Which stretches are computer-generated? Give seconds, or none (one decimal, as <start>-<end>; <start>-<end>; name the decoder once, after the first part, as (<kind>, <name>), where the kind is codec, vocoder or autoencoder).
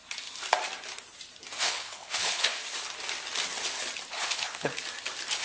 1.6-2.6 (codec, HILCodec); 4.1-4.7